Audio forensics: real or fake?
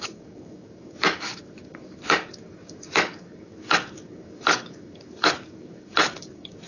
fake